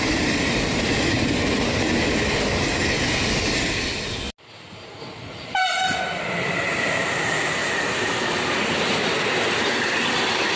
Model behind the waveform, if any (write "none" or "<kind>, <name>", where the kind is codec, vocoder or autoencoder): none